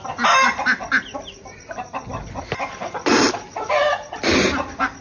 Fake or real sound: real